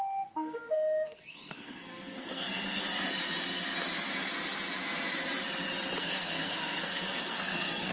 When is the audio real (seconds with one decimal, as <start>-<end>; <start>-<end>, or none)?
2.8-6.0